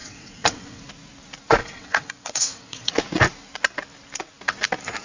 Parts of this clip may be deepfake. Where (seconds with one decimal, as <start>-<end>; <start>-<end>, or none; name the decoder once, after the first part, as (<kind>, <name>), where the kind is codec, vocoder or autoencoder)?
0.0-0.8 (vocoder, WaveNeXt); 1.6-2.9